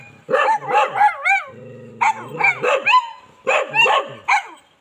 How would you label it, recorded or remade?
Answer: recorded